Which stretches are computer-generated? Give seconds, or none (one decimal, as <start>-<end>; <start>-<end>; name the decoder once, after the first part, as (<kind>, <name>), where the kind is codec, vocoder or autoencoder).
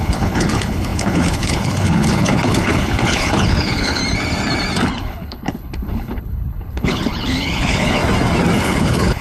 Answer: 0.0-4.0 (codec, HILCodec); 5.0-8.0; 8.6-9.2